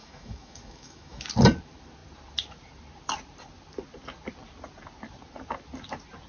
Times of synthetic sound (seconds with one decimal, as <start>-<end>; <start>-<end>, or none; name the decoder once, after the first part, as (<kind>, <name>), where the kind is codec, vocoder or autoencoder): 0.0-1.2 (autoencoder, DAC-VAE)